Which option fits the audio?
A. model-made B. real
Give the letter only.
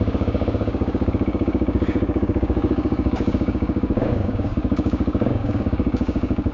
A